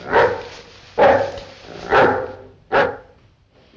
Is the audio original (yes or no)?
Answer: no